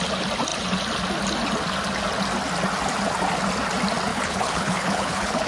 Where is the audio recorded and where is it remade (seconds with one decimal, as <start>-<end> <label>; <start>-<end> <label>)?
0.0-4.1 recorded; 4.1-5.5 remade